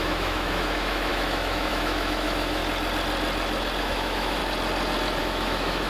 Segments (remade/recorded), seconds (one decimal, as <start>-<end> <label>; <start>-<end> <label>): 0.0-2.6 remade; 2.6-3.8 recorded; 3.8-4.4 remade; 4.4-5.2 recorded; 5.2-5.9 remade

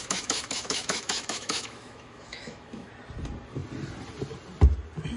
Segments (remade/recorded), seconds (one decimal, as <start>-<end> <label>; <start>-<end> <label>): 0.0-2.9 remade; 2.9-5.2 recorded

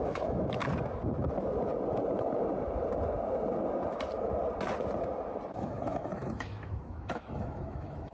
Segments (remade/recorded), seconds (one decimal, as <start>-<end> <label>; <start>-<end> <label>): 0.0-0.6 remade; 0.6-5.5 recorded; 5.5-8.1 remade

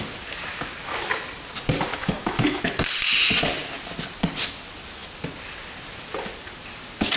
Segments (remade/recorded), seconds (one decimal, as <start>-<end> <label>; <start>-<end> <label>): 0.0-1.9 recorded; 1.9-2.6 remade; 2.6-7.2 recorded